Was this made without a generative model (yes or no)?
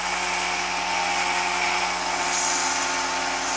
yes